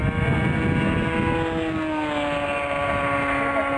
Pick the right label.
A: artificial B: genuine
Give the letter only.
B